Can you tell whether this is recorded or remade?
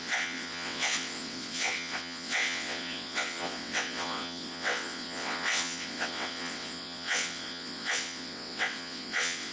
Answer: remade